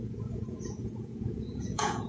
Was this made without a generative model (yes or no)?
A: no